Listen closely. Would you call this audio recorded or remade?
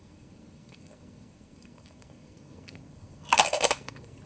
remade